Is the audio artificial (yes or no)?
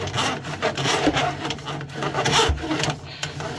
no